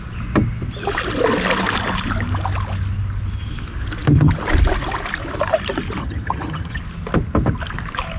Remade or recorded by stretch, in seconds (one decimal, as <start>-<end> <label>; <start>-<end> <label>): 0.0-6.0 recorded; 6.0-6.8 remade; 6.8-8.2 recorded